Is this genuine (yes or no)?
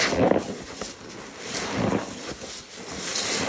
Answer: yes